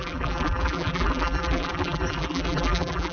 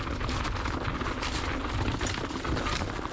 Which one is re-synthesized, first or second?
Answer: first